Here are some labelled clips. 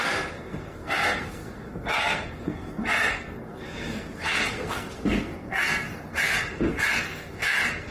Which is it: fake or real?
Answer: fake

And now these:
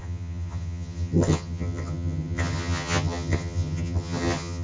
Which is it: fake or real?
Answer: fake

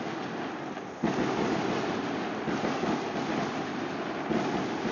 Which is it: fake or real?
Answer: real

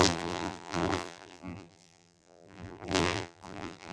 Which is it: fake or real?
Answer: fake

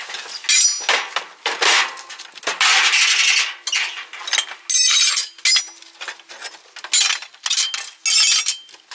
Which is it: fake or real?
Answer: real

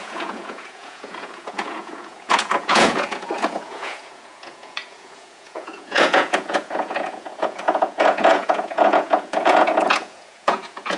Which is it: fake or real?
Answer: fake